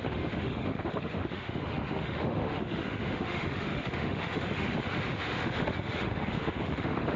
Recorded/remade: remade